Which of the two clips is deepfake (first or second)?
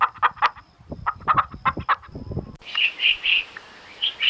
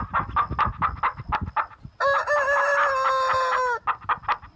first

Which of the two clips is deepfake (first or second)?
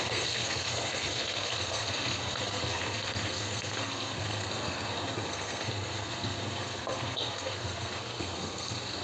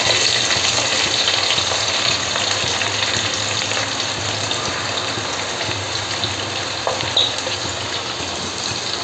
first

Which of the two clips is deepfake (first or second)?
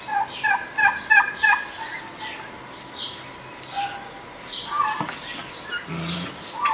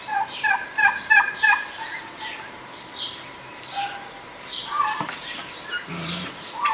second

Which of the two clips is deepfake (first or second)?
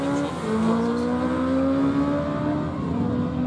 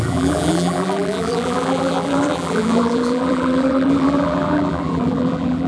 second